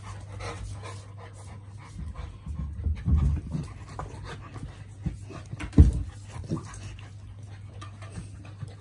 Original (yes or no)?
yes